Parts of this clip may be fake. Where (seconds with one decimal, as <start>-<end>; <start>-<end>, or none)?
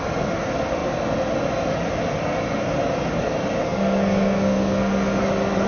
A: 3.6-5.2